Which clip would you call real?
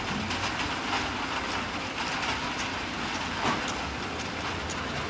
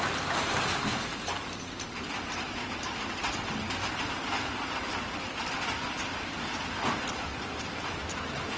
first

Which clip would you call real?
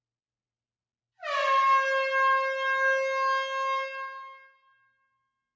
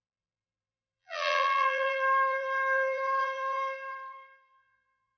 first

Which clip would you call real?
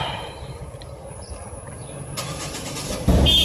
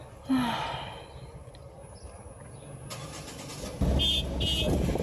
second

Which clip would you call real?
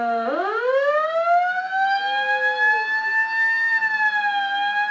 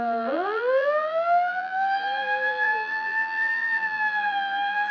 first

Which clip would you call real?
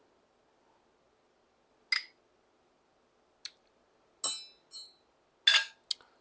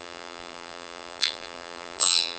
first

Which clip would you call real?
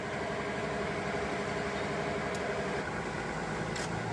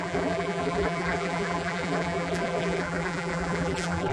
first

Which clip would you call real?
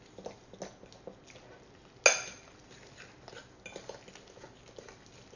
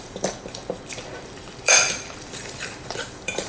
first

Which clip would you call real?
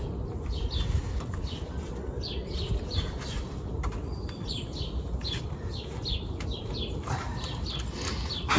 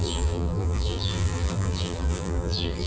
first